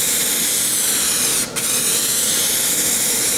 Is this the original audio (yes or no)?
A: yes